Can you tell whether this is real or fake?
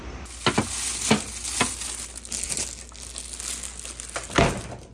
real